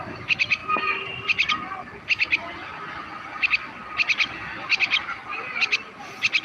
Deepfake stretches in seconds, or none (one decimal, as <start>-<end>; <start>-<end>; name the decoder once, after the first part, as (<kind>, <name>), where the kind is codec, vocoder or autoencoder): none